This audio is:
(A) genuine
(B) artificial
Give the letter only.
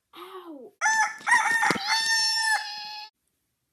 A